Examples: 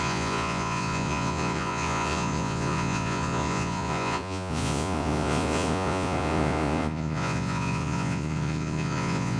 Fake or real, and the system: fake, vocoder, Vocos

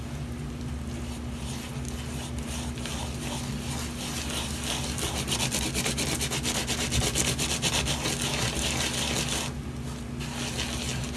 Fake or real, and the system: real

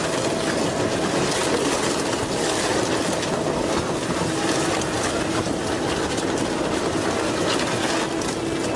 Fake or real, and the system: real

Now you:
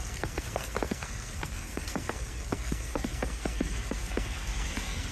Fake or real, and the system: fake, codec, SNAC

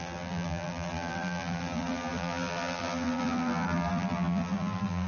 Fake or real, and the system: fake, vocoder, BigVGAN v2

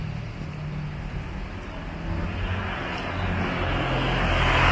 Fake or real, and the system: real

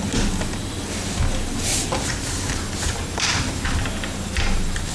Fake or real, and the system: real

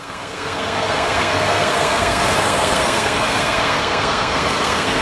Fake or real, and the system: fake, codec, SNAC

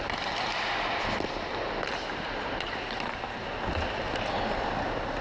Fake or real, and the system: real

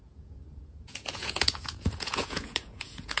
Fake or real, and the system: fake, vocoder, Vocos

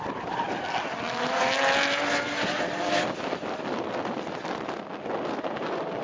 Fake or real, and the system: real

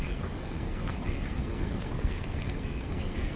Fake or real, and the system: fake, codec, SNAC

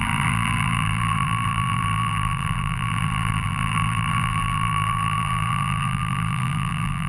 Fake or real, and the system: fake, vocoder, BigVGAN v2